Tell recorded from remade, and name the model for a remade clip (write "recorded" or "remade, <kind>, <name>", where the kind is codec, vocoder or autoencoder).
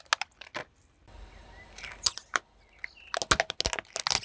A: recorded